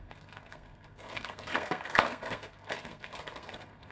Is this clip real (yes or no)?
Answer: no